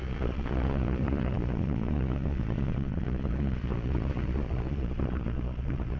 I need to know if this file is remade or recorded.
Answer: remade